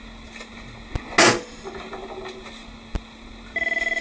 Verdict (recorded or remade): recorded